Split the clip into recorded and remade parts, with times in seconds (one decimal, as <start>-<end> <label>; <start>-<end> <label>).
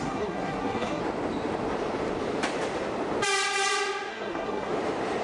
0.0-1.0 remade; 1.0-4.1 recorded; 4.1-4.7 remade; 4.7-5.2 recorded